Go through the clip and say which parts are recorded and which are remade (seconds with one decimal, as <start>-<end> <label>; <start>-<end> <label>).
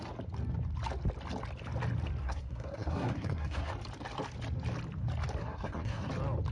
0.0-2.2 recorded; 2.2-3.7 remade; 3.7-5.4 recorded; 5.4-6.1 remade; 6.1-6.5 recorded